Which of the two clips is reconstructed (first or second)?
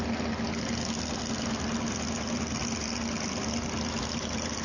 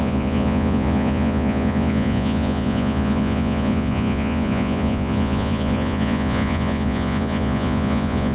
second